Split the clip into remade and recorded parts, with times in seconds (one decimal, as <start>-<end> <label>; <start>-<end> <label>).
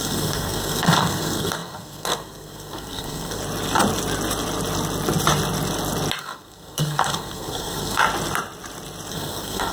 0.0-3.4 remade; 3.4-6.2 recorded; 6.2-8.0 remade; 8.0-9.1 recorded; 9.1-9.7 remade